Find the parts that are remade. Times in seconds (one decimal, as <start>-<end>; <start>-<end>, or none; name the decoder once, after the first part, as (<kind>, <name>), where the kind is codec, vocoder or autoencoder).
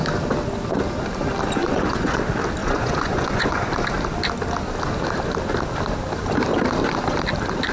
1.6-2.2 (vocoder, Vocos); 2.6-3.7